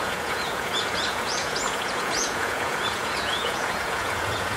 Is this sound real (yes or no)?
no